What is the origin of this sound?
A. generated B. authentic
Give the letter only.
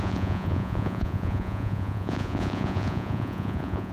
A